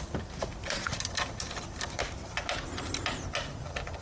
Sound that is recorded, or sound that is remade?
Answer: recorded